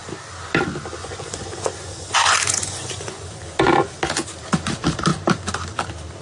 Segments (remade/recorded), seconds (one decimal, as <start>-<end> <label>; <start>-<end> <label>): 0.0-1.0 recorded; 1.0-3.3 remade; 3.3-6.2 recorded